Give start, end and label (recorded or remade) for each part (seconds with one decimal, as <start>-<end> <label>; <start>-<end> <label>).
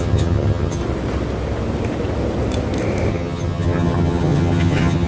0.0-0.8 remade; 0.8-3.1 recorded; 3.1-5.1 remade